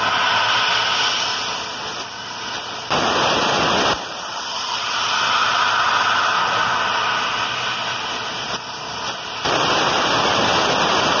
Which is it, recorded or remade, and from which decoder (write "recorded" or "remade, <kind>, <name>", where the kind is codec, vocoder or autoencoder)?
recorded